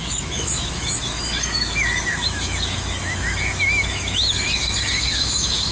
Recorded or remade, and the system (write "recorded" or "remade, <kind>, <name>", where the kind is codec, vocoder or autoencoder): remade, autoencoder, DAC-VAE